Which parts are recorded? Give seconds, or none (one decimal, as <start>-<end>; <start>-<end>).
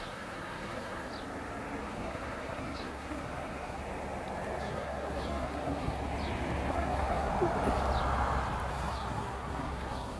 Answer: 1.1-1.8; 3.8-4.6; 6.0-6.7; 7.3-8.7